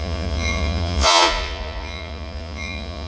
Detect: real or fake fake